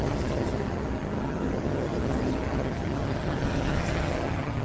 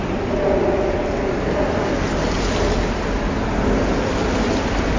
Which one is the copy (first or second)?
first